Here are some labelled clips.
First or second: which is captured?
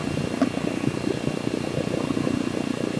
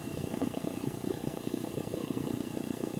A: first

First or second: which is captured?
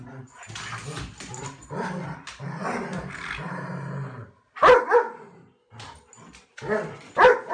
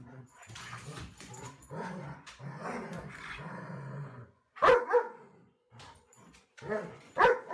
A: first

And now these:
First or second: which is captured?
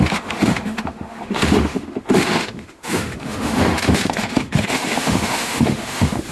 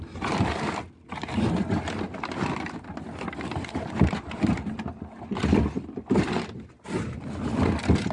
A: second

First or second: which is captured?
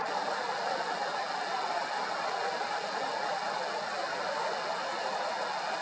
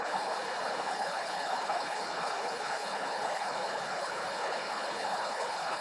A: first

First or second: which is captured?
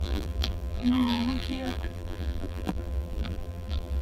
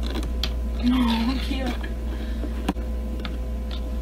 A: second